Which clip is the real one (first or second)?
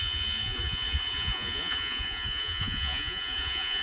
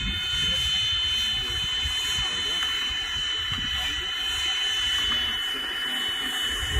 second